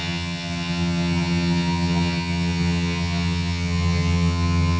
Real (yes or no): no